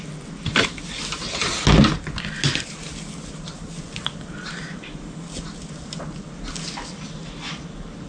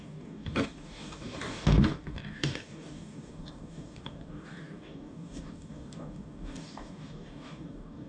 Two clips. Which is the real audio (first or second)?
first